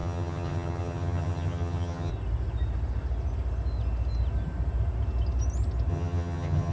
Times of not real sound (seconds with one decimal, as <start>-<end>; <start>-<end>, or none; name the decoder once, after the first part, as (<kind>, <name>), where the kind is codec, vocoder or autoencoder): 0.0-2.1 (vocoder, HiFi-GAN); 5.9-6.7